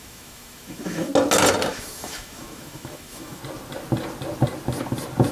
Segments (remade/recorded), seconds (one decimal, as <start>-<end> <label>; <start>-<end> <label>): 0.0-1.1 remade; 1.1-1.7 recorded; 1.7-3.4 remade; 3.4-5.3 recorded